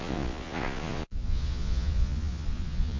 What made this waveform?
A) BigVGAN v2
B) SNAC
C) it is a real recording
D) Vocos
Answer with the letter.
D